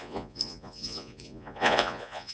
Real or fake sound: fake